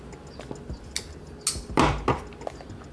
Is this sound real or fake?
real